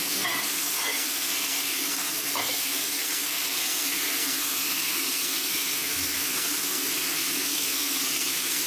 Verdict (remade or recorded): remade